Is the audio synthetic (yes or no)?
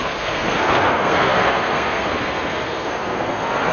yes